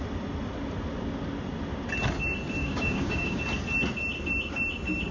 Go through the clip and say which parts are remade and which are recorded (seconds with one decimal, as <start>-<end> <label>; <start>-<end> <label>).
0.0-2.6 recorded; 2.6-3.4 remade; 3.4-5.1 recorded